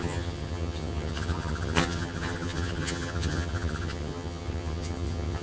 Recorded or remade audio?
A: remade